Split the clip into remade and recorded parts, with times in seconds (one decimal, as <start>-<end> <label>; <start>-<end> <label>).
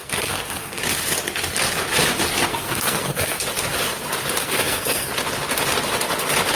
0.0-0.8 remade; 0.8-2.5 recorded; 2.5-3.4 remade; 3.4-4.4 recorded; 4.4-5.1 remade; 5.1-6.6 recorded